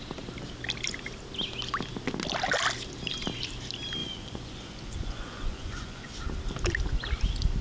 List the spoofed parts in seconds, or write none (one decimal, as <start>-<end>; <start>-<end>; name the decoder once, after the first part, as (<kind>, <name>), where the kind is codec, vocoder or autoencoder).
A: 4.0-6.2 (vocoder, Vocos)